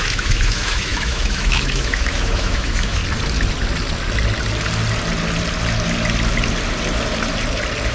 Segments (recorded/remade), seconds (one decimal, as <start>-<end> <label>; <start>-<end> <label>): 0.0-3.0 remade; 3.0-7.9 recorded